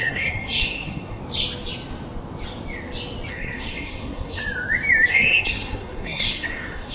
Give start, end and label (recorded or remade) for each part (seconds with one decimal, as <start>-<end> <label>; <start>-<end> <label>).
0.0-1.2 remade; 1.2-3.3 recorded; 3.3-4.4 remade; 4.4-5.1 recorded; 5.1-6.9 remade

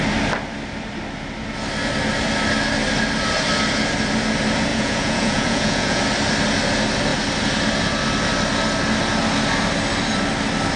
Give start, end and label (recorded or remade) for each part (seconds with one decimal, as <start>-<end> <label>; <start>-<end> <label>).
0.0-4.7 recorded; 4.7-6.0 remade; 6.0-10.8 recorded

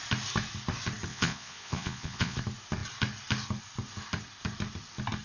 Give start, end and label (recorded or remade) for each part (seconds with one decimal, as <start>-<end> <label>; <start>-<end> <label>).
0.0-1.1 recorded; 1.1-2.4 remade; 2.4-5.2 recorded

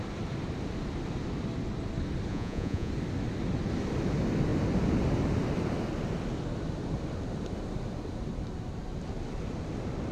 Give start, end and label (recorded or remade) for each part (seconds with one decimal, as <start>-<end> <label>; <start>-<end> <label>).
0.0-2.3 recorded; 2.3-2.9 remade; 2.9-10.1 recorded